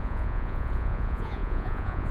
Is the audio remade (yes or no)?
yes